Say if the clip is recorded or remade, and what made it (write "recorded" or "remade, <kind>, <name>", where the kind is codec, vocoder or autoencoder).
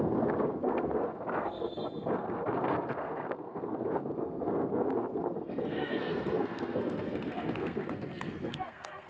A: remade, codec, SNAC